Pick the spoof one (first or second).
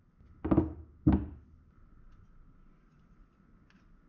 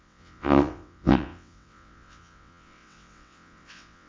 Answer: second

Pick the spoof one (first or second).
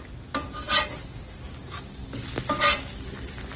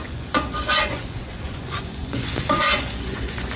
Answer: second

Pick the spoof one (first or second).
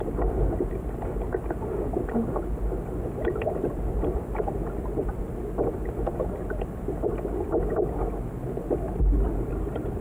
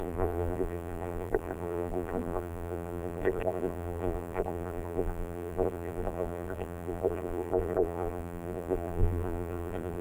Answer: second